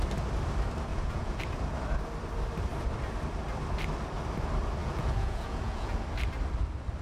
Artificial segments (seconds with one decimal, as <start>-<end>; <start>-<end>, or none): 0.9-1.4; 4.8-6.0